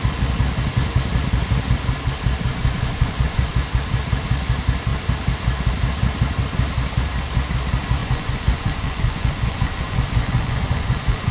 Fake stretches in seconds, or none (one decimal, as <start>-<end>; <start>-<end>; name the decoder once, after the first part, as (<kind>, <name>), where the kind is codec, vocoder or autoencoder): 2.5-3.5 (vocoder, Vocos); 8.0-11.3